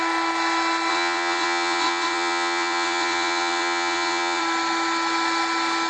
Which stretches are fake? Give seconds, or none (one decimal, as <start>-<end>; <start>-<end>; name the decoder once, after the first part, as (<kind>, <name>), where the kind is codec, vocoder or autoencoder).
0.9-4.4 (vocoder, WaveNeXt)

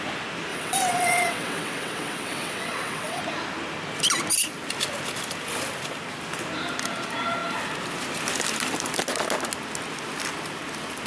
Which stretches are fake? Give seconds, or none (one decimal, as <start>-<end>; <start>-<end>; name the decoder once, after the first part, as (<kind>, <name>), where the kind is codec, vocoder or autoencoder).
0.5-3.2 (vocoder, WaveNeXt)

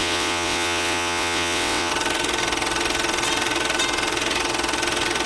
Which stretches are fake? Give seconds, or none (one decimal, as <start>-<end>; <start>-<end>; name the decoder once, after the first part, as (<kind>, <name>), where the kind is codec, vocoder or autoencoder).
0.0-1.9 (vocoder, WaveNeXt)

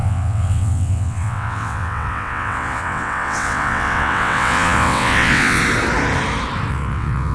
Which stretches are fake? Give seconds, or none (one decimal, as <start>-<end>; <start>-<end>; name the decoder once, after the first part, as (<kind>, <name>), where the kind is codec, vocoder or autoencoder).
0.0-5.6 (vocoder, WaveNeXt); 6.7-7.3

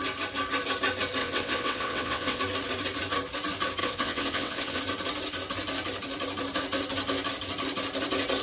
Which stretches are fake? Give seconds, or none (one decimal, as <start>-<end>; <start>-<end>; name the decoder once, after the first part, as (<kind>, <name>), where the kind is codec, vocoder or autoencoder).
1.2-2.4 (vocoder, WaveNeXt); 3.8-4.8

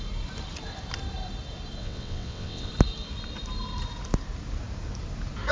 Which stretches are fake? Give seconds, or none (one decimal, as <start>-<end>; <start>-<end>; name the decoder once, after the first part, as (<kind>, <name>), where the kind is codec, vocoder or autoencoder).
1.8-2.7 (vocoder, WaveNeXt)

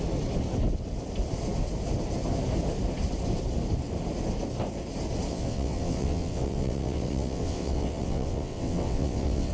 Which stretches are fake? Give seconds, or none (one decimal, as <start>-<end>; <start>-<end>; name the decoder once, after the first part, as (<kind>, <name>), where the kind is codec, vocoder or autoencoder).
5.3-9.5 (vocoder, WaveNeXt)

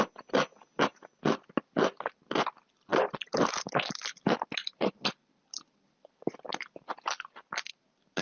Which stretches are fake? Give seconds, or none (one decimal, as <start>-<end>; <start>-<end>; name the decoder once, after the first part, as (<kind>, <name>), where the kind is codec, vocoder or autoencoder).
none